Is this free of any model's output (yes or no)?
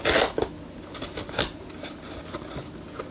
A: yes